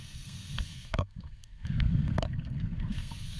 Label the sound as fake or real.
fake